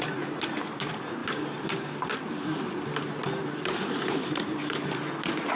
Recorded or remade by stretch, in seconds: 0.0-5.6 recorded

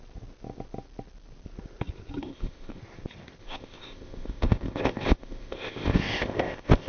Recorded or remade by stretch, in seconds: 0.0-2.2 recorded; 2.2-2.8 remade; 2.8-3.4 recorded; 3.4-6.9 remade